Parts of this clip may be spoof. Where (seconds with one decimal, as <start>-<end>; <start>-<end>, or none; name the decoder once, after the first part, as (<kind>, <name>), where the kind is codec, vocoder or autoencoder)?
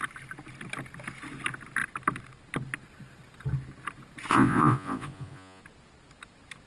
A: 4.3-5.6 (vocoder, Vocos)